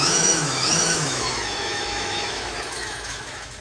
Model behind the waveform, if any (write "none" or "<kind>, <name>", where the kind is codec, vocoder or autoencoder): autoencoder, DAC-VAE